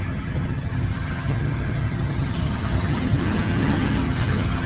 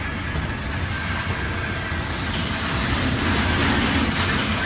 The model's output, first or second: first